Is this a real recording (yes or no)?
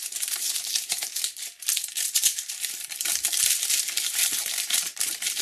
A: no